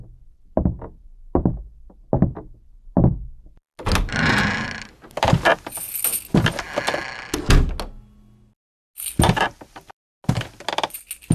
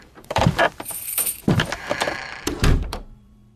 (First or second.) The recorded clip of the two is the first